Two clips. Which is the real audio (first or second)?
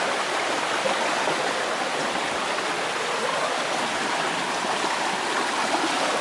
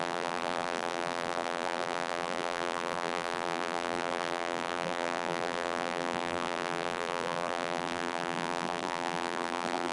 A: first